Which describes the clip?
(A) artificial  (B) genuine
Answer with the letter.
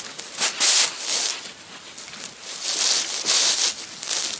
B